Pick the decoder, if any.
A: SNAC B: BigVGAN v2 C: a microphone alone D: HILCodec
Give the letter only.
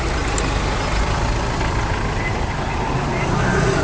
C